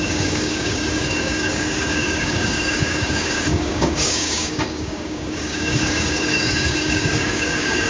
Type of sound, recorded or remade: remade